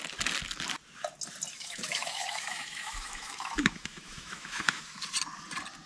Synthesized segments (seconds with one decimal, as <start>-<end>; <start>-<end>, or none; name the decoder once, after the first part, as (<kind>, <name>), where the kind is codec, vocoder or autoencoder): 1.5-4.8 (autoencoder, DAC-VAE)